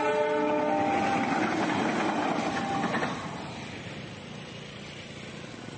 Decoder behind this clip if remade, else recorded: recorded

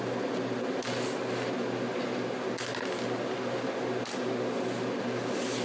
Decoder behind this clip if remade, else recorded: recorded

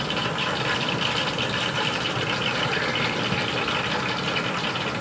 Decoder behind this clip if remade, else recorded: remade, vocoder, BigVGAN v2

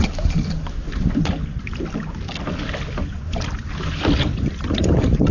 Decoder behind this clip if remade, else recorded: recorded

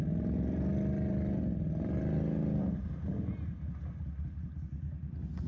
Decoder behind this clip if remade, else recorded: recorded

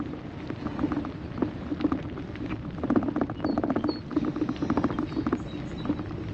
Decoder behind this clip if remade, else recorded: recorded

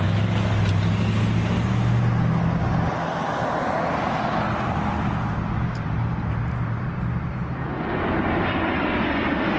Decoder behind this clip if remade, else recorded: recorded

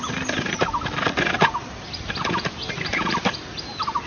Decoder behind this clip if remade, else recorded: recorded